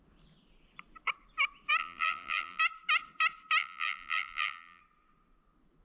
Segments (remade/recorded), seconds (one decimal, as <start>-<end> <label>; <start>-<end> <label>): 0.0-1.8 recorded; 1.8-2.6 remade; 2.6-3.6 recorded; 3.6-4.8 remade; 4.8-5.8 recorded